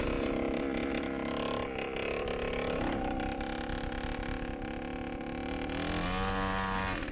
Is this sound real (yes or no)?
yes